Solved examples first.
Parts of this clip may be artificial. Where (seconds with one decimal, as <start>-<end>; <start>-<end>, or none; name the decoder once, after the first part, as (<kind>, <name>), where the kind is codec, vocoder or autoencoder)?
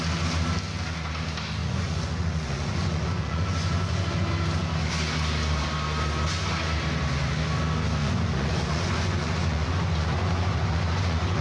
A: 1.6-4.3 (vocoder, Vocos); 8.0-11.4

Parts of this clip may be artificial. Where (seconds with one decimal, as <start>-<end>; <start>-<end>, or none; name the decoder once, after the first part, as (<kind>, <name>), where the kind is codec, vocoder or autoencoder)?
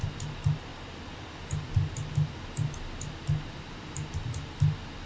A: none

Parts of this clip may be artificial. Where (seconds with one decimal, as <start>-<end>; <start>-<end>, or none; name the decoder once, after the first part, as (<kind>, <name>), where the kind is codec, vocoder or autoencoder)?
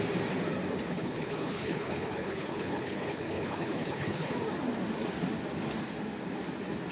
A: 0.8-4.3 (codec, HILCodec)